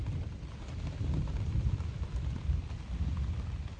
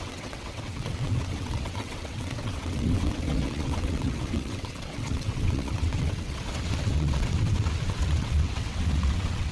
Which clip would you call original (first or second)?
first